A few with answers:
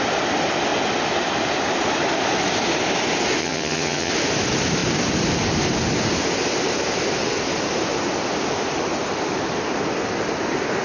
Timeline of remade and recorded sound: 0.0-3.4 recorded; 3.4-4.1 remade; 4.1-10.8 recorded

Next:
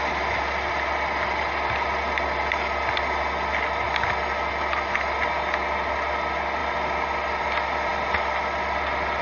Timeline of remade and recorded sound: 0.0-9.2 recorded

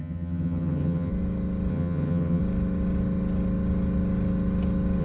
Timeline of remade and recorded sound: 0.0-1.1 remade; 1.1-1.7 recorded; 1.7-2.4 remade; 2.4-5.0 recorded

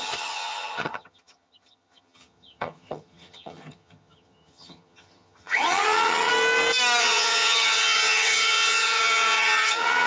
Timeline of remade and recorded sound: 0.0-6.3 remade; 6.3-7.0 recorded; 7.0-10.1 remade